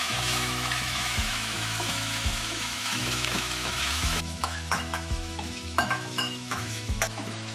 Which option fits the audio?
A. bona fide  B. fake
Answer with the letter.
B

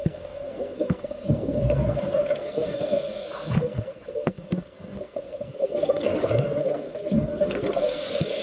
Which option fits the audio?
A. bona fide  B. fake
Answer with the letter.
B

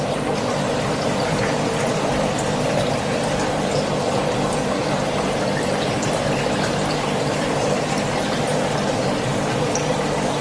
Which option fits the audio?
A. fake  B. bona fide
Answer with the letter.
A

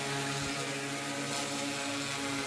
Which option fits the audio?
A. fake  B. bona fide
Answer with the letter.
B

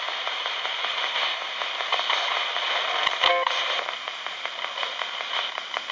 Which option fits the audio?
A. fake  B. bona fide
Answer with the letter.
A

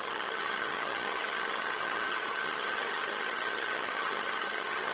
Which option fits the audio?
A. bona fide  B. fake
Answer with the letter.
B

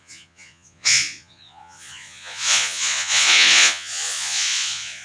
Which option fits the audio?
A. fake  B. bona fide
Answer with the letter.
A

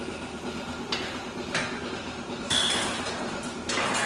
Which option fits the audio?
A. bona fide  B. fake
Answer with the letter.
A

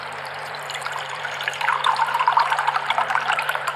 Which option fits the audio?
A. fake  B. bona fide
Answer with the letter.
A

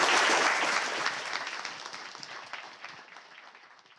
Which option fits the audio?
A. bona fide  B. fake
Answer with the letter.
A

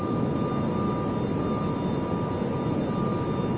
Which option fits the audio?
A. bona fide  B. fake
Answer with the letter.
A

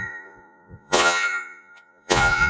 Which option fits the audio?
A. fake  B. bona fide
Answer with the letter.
A